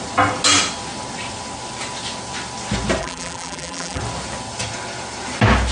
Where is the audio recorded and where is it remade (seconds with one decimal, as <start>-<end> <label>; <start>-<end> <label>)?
0.0-3.0 recorded; 3.0-4.0 remade; 4.0-5.7 recorded